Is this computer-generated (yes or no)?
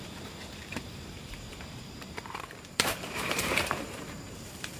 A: yes